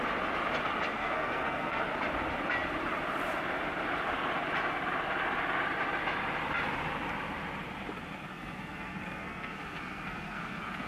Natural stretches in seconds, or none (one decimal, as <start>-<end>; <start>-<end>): 0.0-0.9; 1.8-8.3